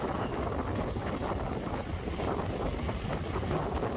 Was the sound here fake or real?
real